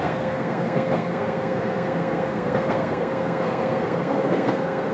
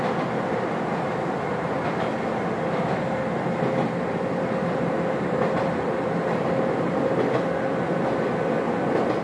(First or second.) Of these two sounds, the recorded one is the second